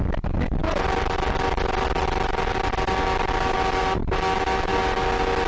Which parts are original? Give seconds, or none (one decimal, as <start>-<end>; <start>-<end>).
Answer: 0.0-5.5